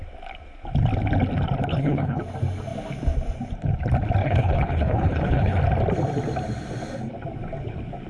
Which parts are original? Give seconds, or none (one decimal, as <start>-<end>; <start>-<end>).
0.0-1.7; 2.2-4.2; 5.6-8.1